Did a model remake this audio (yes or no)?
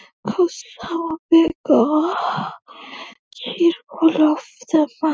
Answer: no